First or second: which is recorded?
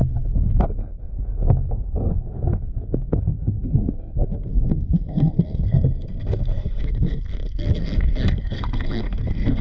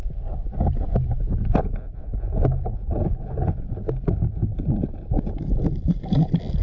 second